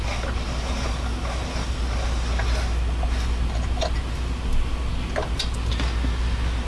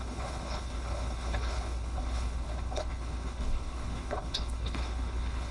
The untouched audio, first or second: first